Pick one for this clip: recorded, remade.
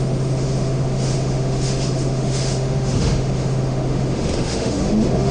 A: remade